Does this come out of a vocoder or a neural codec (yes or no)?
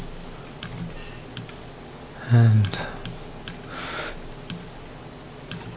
no